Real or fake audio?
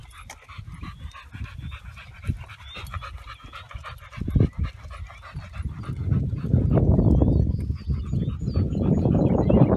real